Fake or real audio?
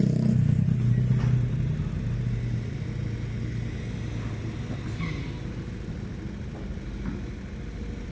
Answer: real